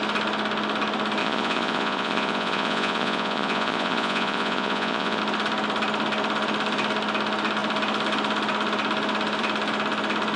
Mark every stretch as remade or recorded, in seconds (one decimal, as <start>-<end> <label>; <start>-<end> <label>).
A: 0.0-1.2 recorded; 1.2-5.2 remade; 5.2-10.4 recorded